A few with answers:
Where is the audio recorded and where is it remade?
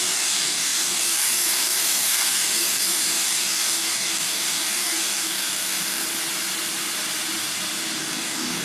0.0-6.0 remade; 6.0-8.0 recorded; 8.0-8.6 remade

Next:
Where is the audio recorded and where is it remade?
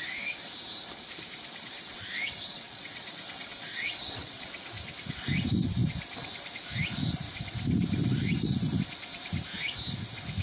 0.0-1.9 recorded; 1.9-4.5 remade; 4.5-10.4 recorded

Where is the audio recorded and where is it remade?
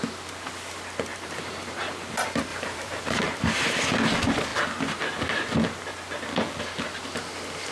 0.0-1.1 recorded; 1.1-1.9 remade; 1.9-2.5 recorded; 2.5-3.2 remade; 3.2-7.7 recorded